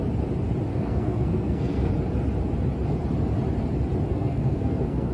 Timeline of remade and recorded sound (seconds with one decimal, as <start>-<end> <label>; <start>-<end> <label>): 0.0-0.7 recorded; 0.7-1.9 remade; 1.9-4.1 recorded; 4.1-5.1 remade